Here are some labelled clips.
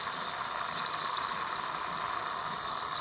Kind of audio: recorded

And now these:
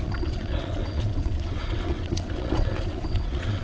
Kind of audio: remade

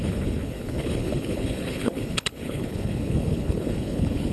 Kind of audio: remade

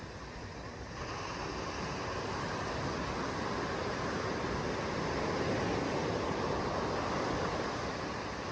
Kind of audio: recorded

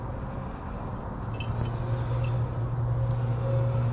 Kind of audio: recorded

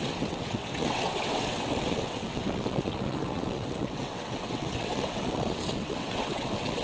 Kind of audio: remade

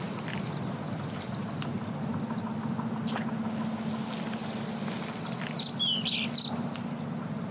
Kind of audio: recorded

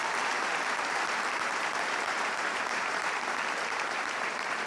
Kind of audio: remade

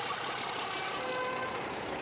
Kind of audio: recorded